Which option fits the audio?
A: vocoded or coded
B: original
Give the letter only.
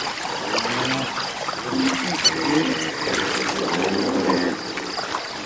B